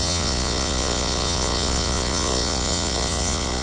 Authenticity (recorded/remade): remade